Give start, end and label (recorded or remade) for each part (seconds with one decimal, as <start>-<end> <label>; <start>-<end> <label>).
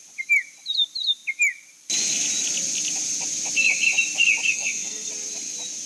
0.0-4.5 recorded; 4.5-5.1 remade; 5.1-5.9 recorded